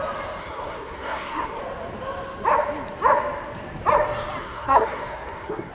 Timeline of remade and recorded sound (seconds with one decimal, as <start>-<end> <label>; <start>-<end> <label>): 0.0-0.4 recorded; 0.4-1.6 remade; 1.6-4.4 recorded; 4.4-5.7 remade